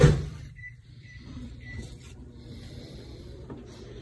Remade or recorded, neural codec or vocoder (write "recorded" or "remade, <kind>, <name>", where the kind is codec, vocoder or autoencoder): remade, vocoder, BigVGAN v2